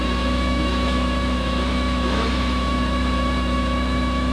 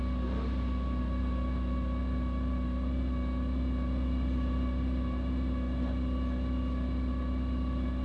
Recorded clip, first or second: second